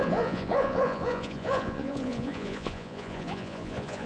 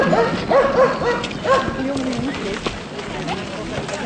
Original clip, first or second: second